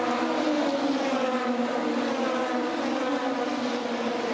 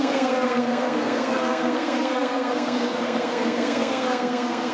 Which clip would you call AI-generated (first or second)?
second